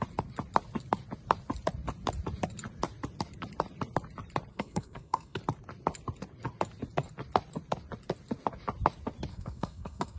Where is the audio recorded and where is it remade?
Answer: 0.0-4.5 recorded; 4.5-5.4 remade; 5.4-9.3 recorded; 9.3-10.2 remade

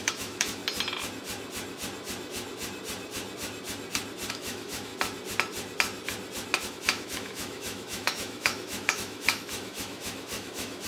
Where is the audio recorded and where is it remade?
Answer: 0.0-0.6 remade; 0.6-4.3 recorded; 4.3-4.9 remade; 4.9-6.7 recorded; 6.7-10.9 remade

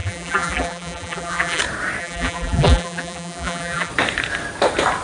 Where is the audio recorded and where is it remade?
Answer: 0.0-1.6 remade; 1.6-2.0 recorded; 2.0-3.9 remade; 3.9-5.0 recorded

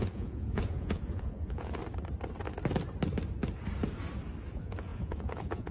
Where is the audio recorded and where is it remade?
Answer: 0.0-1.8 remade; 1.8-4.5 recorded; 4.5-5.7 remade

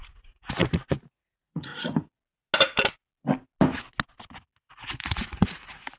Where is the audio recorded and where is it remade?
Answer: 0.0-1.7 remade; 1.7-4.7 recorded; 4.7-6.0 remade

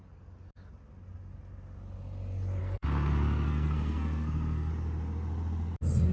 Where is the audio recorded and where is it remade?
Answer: 0.0-2.6 recorded; 2.6-4.7 remade; 4.7-6.1 recorded

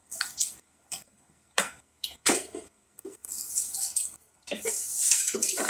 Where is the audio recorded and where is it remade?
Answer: 0.0-5.7 remade

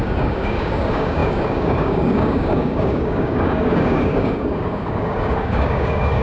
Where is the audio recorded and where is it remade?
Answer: 0.0-6.2 remade